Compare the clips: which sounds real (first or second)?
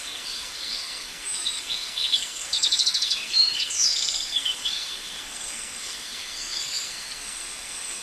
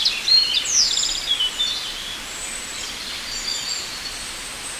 second